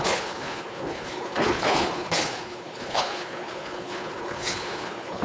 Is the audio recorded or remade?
remade